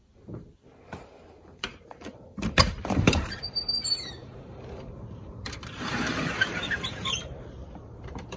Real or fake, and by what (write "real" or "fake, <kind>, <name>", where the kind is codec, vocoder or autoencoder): fake, vocoder, BigVGAN v2